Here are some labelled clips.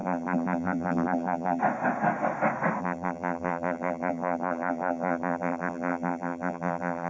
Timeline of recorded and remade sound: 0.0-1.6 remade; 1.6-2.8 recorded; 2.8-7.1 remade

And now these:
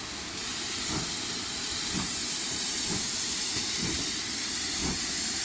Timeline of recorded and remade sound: 0.0-0.4 recorded; 0.4-3.6 remade; 3.6-4.8 recorded; 4.8-5.4 remade

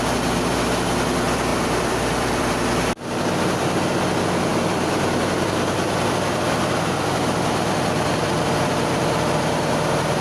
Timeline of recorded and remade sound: 0.0-1.5 recorded; 1.5-2.6 remade; 2.6-4.5 recorded; 4.5-9.0 remade; 9.0-10.2 recorded

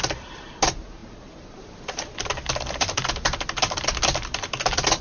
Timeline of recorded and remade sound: 0.0-5.0 recorded

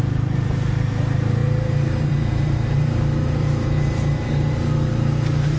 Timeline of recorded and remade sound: 0.0-5.6 remade